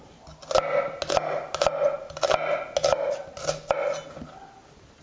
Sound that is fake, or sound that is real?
real